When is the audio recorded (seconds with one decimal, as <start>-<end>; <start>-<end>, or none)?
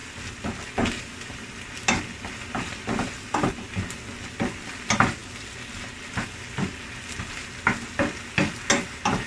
0.0-9.3